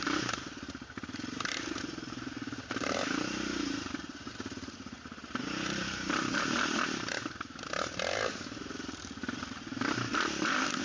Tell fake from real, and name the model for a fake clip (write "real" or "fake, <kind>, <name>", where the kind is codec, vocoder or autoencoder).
fake, vocoder, BigVGAN v2